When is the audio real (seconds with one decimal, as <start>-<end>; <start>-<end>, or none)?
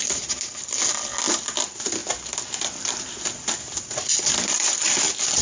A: 0.0-5.4